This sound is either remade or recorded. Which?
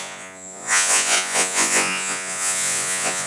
remade